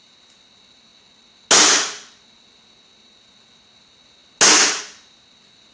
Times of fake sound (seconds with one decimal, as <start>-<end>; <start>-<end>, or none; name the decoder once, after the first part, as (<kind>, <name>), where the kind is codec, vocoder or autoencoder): none